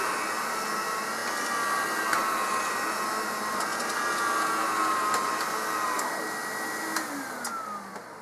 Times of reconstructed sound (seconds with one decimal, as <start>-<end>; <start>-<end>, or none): none